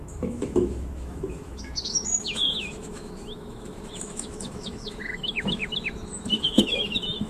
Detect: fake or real fake